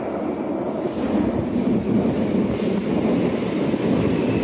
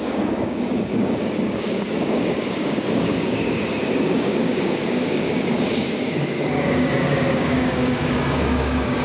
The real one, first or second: first